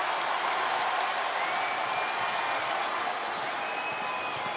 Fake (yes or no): no